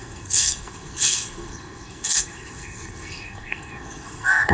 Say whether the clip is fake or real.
fake